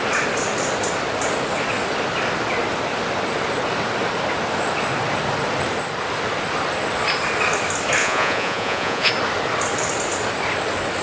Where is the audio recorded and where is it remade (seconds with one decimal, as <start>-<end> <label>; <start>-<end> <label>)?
0.0-8.0 recorded; 8.0-9.1 remade; 9.1-11.0 recorded